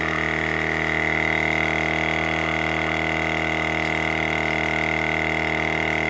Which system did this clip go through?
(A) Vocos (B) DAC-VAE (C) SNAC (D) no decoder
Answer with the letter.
B